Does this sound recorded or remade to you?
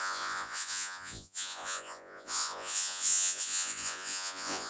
remade